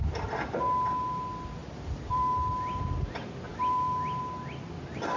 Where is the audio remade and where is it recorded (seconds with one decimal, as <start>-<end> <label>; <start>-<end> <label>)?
0.0-1.6 recorded; 1.6-2.8 remade; 2.8-3.5 recorded; 3.5-4.2 remade; 4.2-5.2 recorded